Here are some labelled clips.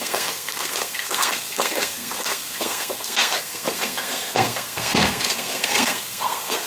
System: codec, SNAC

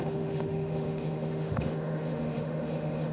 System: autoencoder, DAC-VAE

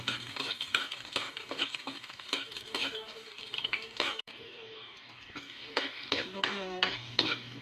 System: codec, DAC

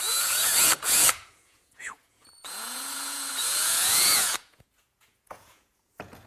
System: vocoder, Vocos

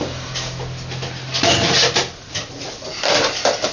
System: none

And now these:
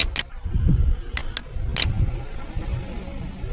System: none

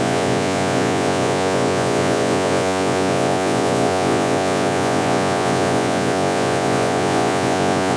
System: vocoder, Vocos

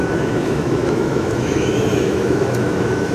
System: autoencoder, DAC-VAE